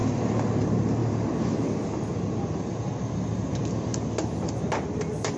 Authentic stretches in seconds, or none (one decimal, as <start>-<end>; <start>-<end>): 0.0-5.4